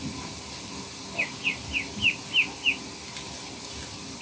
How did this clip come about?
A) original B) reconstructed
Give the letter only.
A